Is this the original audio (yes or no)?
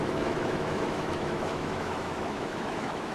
no